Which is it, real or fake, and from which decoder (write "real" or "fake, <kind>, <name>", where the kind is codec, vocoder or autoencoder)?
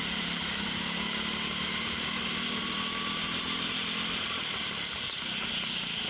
real